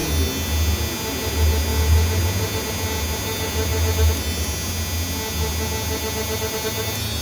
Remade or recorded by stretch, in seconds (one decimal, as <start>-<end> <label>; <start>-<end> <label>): 0.0-7.2 recorded